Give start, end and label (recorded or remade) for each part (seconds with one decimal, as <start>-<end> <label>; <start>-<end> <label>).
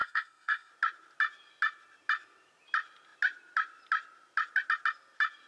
0.0-0.7 remade; 0.7-5.5 recorded